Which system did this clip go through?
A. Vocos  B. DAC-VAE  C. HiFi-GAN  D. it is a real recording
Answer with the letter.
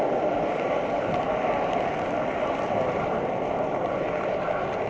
D